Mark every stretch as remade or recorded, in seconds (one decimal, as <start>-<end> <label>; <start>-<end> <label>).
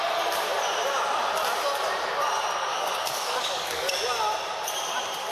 0.0-2.6 recorded; 2.6-3.9 remade; 3.9-5.3 recorded